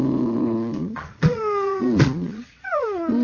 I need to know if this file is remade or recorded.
remade